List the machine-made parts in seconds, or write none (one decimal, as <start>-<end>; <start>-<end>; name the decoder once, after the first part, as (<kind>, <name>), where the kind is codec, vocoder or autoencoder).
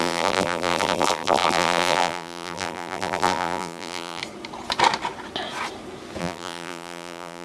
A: 0.0-4.2 (vocoder, BigVGAN v2); 6.2-7.4